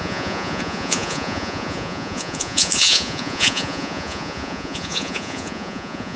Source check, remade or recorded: remade